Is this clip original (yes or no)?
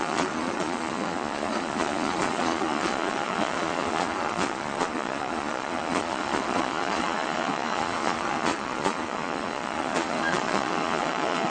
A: no